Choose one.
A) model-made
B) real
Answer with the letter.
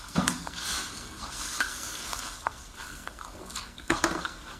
A